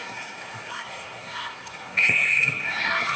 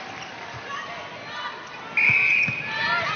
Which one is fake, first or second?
first